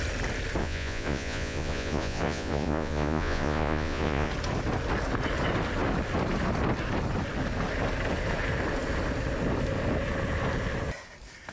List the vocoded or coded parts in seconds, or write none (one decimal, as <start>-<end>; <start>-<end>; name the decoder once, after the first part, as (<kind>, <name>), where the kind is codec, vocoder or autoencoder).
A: 0.6-4.3 (vocoder, Vocos)